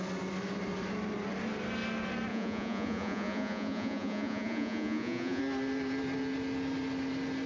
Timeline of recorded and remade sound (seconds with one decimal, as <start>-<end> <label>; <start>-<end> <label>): 0.0-2.3 recorded; 2.3-5.4 remade; 5.4-7.5 recorded